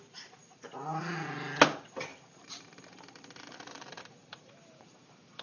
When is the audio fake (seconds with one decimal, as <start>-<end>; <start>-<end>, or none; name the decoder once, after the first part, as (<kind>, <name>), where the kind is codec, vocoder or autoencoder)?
0.4-1.0 (vocoder, BigVGAN v2); 2.1-5.4